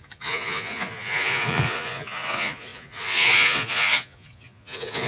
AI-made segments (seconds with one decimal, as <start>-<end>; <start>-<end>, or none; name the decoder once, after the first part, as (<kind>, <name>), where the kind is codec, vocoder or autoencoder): 0.0-5.1 (vocoder, Vocos)